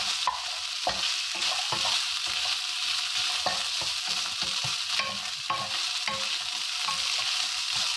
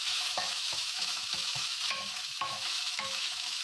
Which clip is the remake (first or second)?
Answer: second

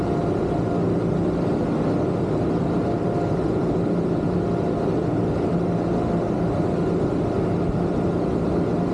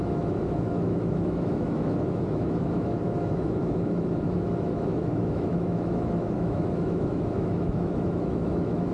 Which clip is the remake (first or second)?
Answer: second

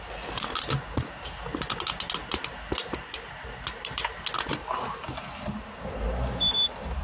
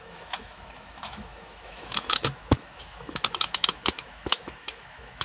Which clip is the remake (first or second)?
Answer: second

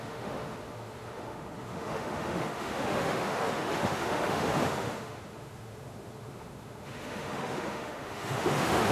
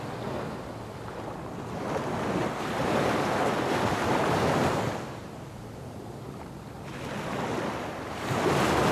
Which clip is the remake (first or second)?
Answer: first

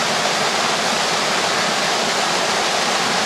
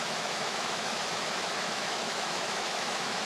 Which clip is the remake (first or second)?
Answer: second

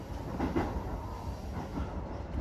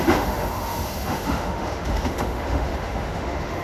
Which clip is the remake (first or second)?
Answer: second